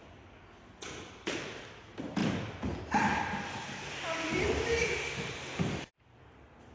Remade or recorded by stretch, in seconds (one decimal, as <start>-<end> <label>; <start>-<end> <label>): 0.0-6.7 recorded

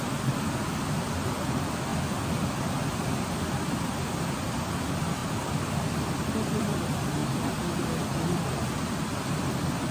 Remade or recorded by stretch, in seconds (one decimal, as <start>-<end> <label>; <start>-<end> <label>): 0.0-5.2 recorded; 5.2-6.8 remade; 6.8-9.9 recorded

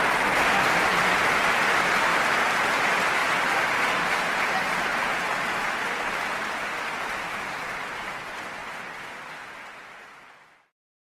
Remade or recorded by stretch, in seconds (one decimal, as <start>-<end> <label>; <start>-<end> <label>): 0.0-3.2 remade; 3.2-7.8 recorded; 7.8-8.6 remade; 8.6-11.1 recorded

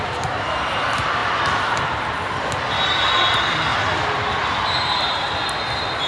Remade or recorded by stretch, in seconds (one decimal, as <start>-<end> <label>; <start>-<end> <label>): 0.0-1.2 recorded; 1.2-2.0 remade; 2.0-3.7 recorded; 3.7-6.1 remade

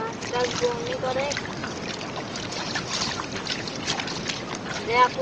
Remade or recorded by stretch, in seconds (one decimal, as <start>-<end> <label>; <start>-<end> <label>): 0.0-5.2 recorded

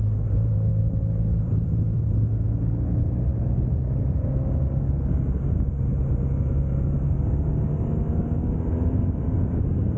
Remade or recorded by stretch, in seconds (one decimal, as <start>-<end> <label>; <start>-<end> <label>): 0.0-0.7 recorded; 0.7-2.2 remade; 2.2-8.7 recorded; 8.7-10.0 remade

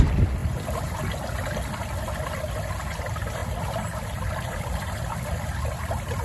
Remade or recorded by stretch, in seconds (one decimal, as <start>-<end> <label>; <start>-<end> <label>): 0.0-0.4 remade; 0.4-3.0 recorded; 3.0-6.2 remade